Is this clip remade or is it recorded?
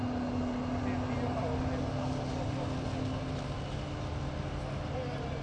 recorded